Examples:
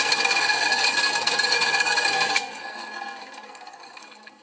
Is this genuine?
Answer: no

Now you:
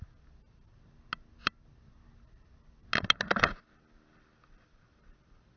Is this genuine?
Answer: yes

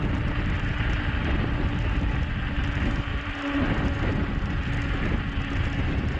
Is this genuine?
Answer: yes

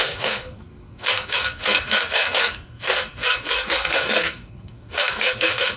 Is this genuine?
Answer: no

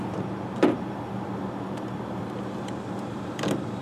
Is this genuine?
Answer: no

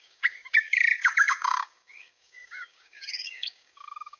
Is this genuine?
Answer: no